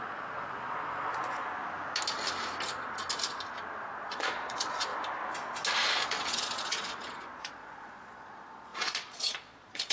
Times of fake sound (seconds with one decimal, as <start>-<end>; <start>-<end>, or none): 0.0-1.4; 4.0-4.9; 6.1-9.9